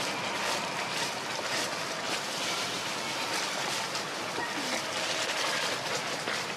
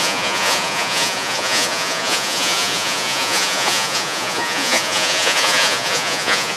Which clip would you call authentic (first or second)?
first